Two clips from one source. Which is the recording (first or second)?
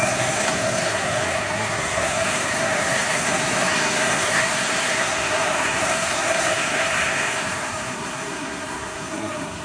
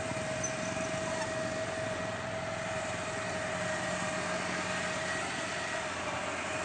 second